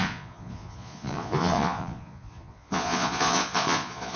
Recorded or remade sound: remade